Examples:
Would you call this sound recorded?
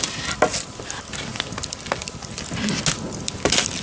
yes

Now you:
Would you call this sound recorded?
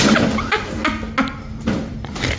yes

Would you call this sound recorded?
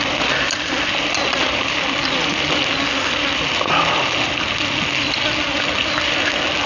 yes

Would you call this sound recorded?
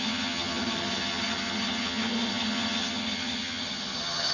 no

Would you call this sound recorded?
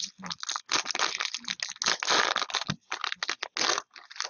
yes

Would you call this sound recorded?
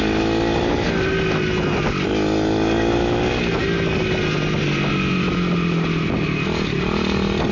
yes